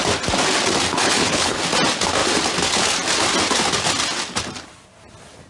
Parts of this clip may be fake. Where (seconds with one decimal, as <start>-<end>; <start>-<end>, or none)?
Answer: 0.9-1.6